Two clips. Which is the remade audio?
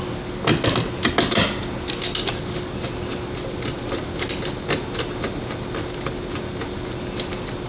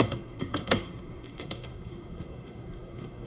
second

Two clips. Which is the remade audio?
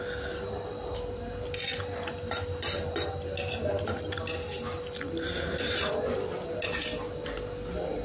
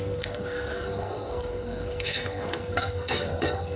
second